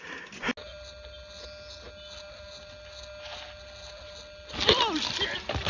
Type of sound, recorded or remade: recorded